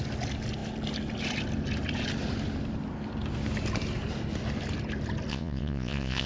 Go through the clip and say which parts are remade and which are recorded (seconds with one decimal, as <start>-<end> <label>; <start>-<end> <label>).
0.0-5.3 recorded; 5.3-6.3 remade